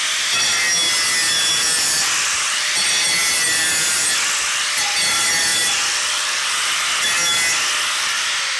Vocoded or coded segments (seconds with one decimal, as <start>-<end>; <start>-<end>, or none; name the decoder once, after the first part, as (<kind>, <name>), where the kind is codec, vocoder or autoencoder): 1.2-4.4 (vocoder, BigVGAN v2); 5.5-6.8